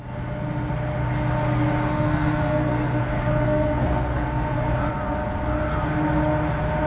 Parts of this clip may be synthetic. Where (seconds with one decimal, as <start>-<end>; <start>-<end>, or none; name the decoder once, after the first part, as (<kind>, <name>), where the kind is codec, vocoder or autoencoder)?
1.9-4.7 (codec, SNAC)